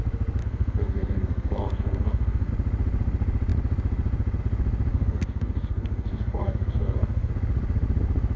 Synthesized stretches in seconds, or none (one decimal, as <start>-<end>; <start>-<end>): 0.4-2.5; 4.9-7.3